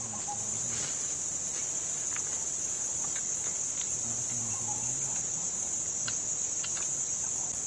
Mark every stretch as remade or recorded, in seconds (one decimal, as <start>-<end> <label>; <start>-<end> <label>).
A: 0.0-7.7 recorded